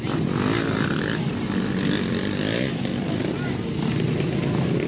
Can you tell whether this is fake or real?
real